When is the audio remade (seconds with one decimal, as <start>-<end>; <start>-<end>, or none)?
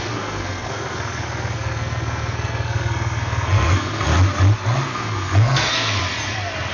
0.0-4.1; 4.9-6.0